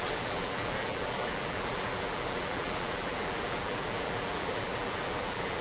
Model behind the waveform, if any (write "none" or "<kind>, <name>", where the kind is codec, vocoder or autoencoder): vocoder, BigVGAN v2